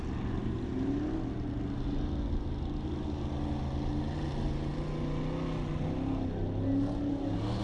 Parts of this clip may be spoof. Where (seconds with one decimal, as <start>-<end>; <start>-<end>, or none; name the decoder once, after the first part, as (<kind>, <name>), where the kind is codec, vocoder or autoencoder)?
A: none